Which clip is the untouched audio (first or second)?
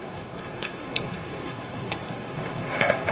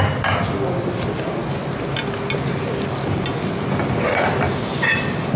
second